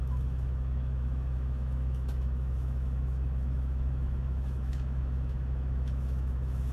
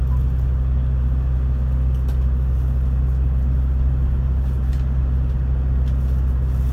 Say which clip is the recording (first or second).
second